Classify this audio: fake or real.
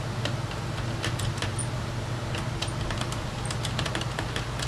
real